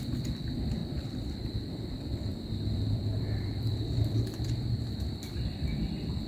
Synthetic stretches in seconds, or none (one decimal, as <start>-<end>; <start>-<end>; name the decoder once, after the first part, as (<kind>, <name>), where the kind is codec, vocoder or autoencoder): 0.0-6.3 (vocoder, BigVGAN v2)